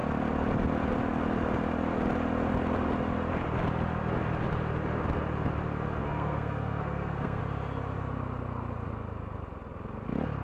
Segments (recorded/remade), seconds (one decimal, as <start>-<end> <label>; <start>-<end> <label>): 0.0-6.0 recorded; 6.0-7.4 remade; 7.4-10.4 recorded